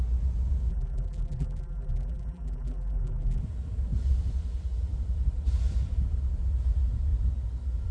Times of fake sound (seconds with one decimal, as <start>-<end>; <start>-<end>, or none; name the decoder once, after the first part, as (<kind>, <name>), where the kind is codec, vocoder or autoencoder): 0.7-3.4 (vocoder, BigVGAN v2)